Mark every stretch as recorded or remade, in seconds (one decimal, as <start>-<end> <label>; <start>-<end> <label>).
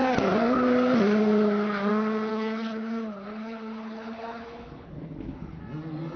0.0-2.3 recorded; 2.3-5.6 remade; 5.6-6.2 recorded